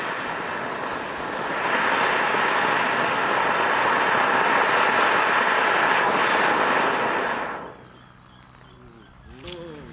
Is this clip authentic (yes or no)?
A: yes